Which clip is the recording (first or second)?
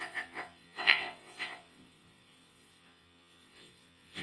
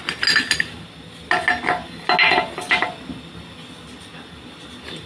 second